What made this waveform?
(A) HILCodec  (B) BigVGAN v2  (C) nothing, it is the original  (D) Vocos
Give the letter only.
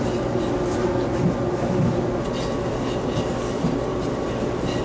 C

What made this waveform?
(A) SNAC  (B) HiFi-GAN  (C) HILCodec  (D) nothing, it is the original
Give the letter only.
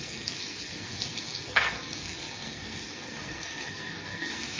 A